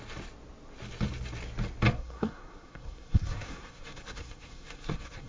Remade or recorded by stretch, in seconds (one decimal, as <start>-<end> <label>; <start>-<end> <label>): 0.0-1.9 recorded; 1.9-5.3 remade